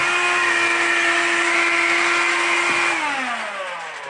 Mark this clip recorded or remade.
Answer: recorded